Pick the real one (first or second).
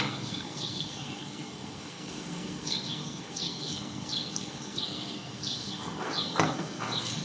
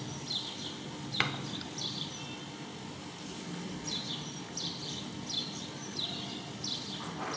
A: second